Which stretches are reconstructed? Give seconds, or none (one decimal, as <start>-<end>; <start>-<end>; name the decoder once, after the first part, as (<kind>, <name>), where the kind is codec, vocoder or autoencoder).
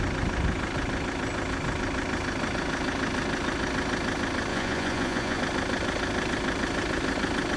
4.5-5.4 (vocoder, Vocos)